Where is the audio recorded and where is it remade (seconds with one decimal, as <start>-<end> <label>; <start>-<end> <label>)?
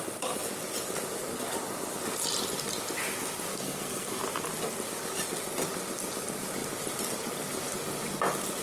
0.0-3.5 recorded; 3.5-4.2 remade; 4.2-8.6 recorded